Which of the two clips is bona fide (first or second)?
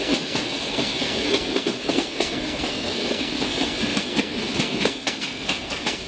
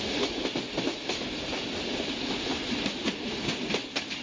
second